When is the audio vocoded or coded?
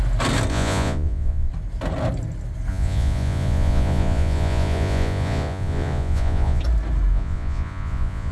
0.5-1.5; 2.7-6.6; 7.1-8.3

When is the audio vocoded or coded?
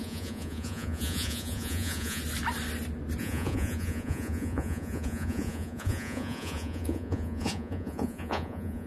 0.0-2.2; 3.2-8.9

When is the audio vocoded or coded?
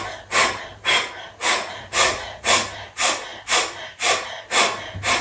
1.4-2.5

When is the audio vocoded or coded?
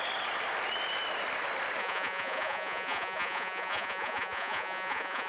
1.8-5.3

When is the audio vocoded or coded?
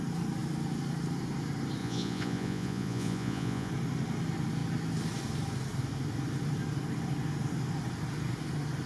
1.8-3.7